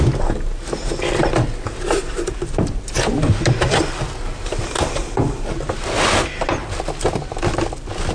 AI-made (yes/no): no